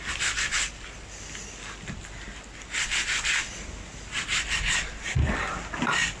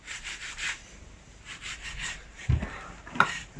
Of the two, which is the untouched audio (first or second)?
first